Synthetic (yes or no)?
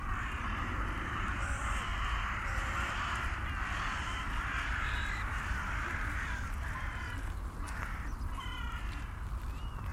yes